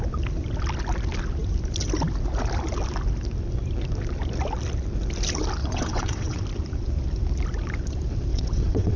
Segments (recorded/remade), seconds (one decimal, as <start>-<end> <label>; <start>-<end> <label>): 0.0-5.6 recorded; 5.6-6.4 remade; 6.4-8.3 recorded; 8.3-9.0 remade